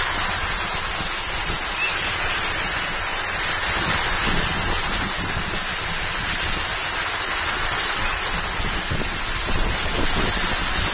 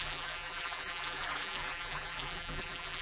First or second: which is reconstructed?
second